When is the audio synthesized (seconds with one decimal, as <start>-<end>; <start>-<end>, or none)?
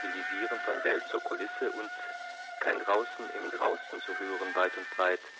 0.7-1.4; 2.1-2.8; 3.4-4.0